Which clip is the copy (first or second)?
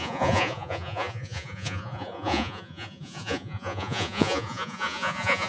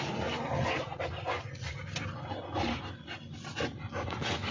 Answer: first